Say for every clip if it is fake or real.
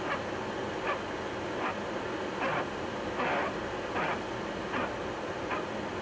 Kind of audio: real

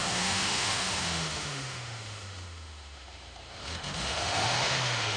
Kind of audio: fake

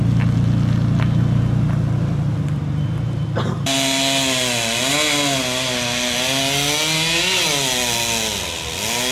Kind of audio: real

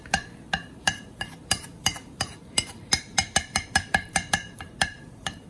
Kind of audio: fake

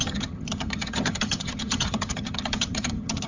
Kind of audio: fake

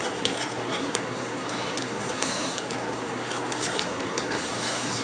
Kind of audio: fake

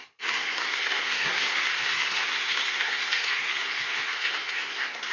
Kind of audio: fake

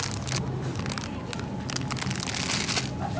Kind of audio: real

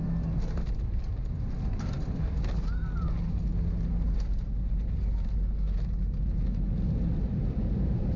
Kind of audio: real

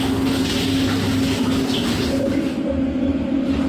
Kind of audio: real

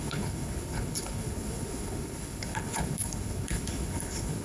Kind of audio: fake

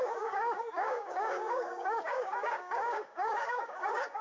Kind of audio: fake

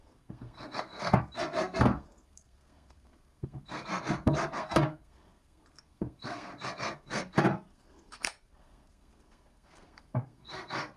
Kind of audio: fake